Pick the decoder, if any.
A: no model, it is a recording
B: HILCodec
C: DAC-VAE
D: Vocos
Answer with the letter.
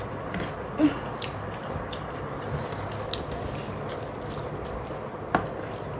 A